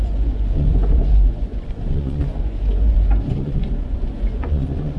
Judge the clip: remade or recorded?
remade